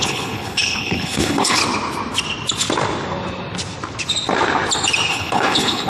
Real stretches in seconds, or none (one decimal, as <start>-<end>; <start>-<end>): 1.6-5.1

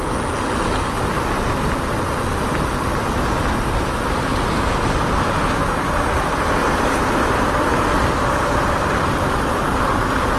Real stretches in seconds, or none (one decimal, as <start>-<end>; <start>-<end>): 0.0-6.6; 9.8-10.4

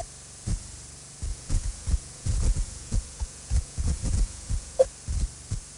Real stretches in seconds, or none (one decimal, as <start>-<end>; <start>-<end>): 0.0-1.3; 4.8-5.8

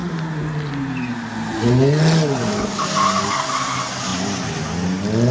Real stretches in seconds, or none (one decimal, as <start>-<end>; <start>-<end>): 0.0-5.3